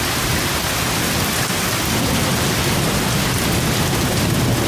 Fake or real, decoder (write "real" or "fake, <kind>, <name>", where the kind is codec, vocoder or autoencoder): real